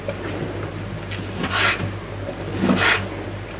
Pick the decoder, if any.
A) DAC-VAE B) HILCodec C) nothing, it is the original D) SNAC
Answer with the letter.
C